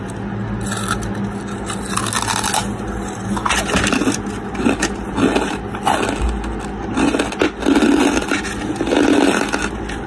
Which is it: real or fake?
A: real